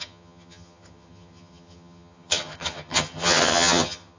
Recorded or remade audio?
remade